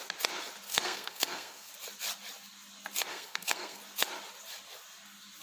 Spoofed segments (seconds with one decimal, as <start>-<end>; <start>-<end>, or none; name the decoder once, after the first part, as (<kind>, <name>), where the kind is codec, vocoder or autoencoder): 0.7-1.7 (codec, SNAC); 3.1-3.8